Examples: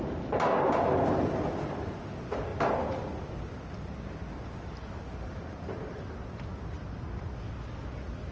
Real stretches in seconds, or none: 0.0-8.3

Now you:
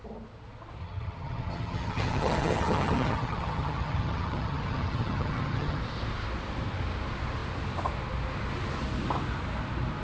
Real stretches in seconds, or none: 0.0-0.8; 5.8-10.0

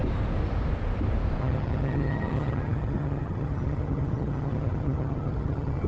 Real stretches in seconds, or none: 0.0-1.4

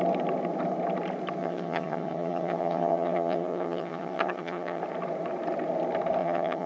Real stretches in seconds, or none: 0.0-1.4; 4.8-6.2

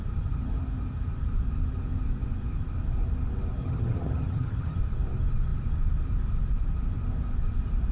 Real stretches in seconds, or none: 0.0-3.6; 4.8-7.9

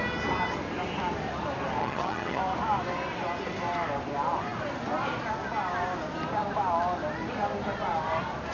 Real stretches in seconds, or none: 0.0-1.8; 2.4-8.5

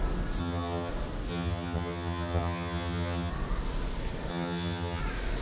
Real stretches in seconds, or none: 0.0-0.4; 0.9-1.3; 3.3-4.3; 5.0-5.4